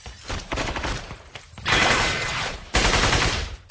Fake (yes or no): yes